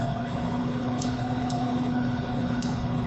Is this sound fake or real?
fake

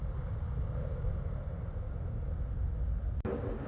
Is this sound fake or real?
real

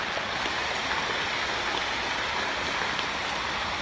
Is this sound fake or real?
real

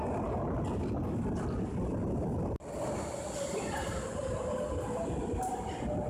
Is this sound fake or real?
real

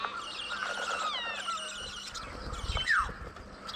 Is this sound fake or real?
real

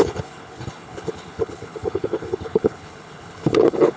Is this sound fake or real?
fake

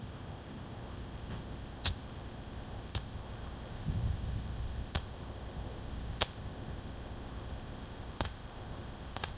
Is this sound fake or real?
fake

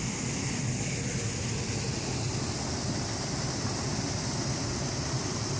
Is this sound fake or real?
real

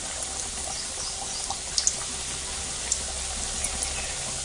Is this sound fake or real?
real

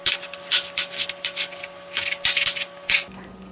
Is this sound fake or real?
real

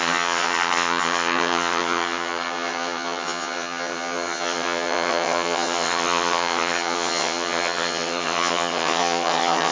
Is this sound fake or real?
fake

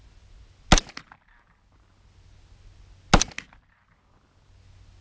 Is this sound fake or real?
real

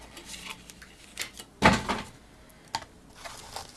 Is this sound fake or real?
real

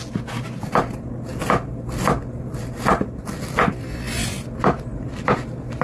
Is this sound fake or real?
real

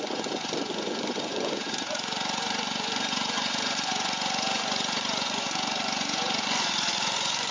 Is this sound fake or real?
fake